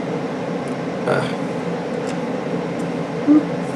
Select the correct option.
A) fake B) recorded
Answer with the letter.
B